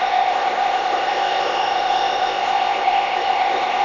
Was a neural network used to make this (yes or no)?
yes